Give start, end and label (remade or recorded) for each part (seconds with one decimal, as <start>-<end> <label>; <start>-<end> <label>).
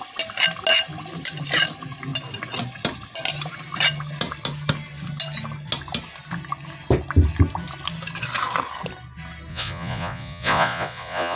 0.0-9.5 recorded; 9.5-11.4 remade